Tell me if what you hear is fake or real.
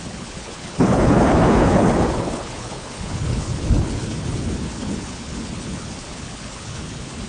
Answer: fake